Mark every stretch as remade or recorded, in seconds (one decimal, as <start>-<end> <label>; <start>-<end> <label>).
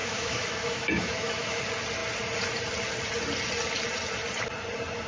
0.0-1.6 remade; 1.6-5.1 recorded